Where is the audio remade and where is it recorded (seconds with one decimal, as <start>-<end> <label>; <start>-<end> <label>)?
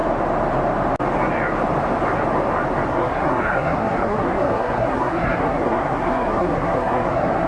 0.0-2.9 recorded; 2.9-7.5 remade